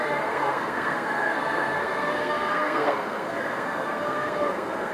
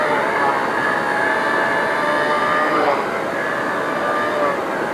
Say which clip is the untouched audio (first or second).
second